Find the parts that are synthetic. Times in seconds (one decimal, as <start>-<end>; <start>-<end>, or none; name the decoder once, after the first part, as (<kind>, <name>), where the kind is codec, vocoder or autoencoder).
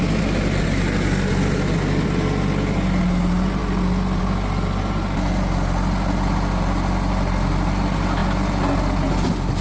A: none